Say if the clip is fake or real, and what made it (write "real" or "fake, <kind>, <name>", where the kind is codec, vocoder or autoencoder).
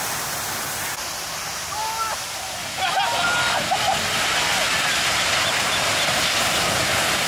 real